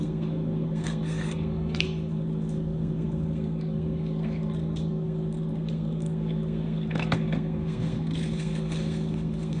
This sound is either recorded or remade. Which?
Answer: remade